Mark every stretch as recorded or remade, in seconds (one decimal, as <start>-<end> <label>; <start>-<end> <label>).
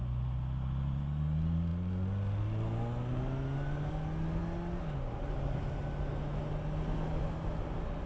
0.0-8.1 recorded